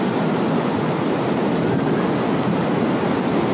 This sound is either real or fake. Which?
real